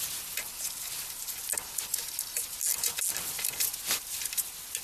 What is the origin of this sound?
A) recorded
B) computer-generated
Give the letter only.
A